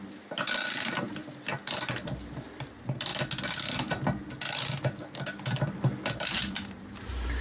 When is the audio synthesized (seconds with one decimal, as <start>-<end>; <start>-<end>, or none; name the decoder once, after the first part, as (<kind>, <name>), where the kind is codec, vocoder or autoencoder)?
0.0-1.2 (vocoder, BigVGAN v2); 1.9-3.1; 6.0-7.4